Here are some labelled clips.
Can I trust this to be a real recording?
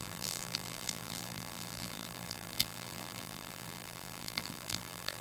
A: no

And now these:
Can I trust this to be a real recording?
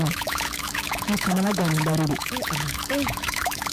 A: no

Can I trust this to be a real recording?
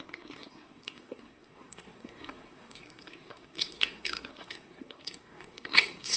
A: no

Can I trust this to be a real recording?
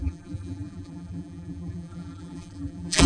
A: no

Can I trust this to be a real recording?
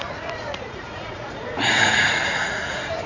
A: no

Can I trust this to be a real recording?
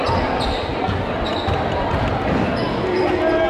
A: yes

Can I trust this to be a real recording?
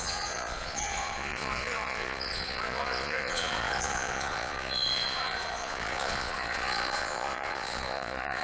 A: no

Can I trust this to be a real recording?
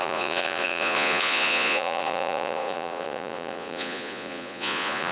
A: no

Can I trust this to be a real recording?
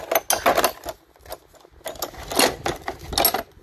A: yes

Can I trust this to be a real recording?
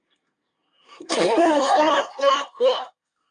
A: no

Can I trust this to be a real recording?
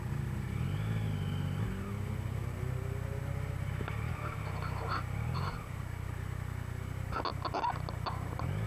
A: yes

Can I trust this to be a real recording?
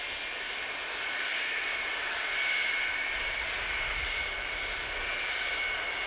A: yes